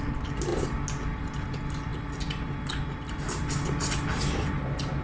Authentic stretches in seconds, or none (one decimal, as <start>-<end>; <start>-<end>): 0.0-5.0